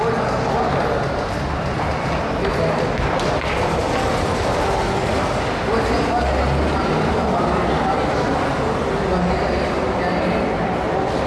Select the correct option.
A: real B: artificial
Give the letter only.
A